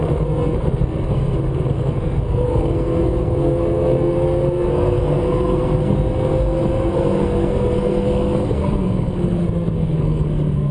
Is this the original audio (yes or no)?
no